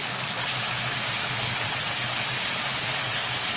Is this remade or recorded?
recorded